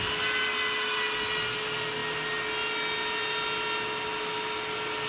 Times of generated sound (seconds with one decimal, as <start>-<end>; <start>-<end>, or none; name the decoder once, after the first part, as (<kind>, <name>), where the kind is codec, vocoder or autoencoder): none